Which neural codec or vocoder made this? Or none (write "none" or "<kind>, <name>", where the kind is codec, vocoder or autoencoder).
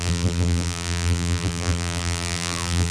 vocoder, BigVGAN v2